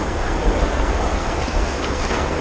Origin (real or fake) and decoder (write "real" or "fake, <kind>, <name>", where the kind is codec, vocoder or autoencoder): fake, codec, SNAC